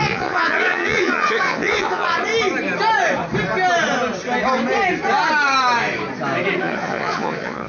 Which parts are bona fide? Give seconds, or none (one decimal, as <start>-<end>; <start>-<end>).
2.3-6.6